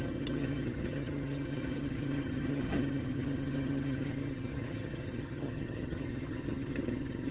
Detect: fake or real fake